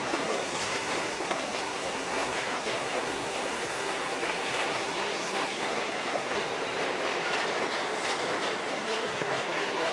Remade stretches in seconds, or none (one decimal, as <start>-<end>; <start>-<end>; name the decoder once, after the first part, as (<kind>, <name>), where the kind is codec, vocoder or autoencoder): 0.0-6.4 (codec, SNAC); 8.7-9.9